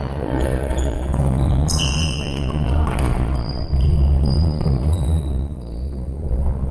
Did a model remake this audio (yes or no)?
yes